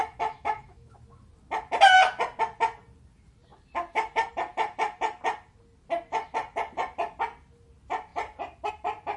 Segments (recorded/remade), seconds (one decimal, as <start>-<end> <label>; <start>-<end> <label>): 0.0-0.9 remade; 0.9-9.2 recorded